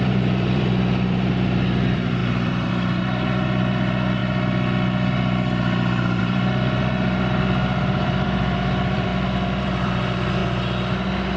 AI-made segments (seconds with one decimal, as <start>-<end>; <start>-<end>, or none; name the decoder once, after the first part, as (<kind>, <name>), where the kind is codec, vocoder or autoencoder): 0.0-4.2 (vocoder, BigVGAN v2); 6.2-10.4